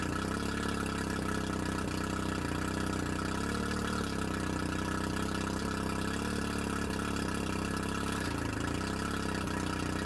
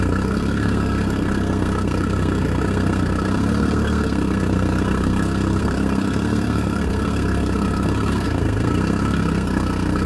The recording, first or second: first